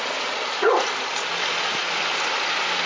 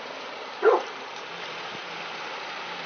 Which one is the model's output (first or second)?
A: second